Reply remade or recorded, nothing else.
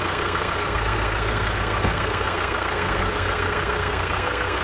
remade